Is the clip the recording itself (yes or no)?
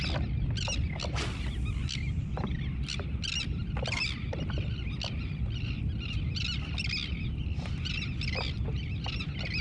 yes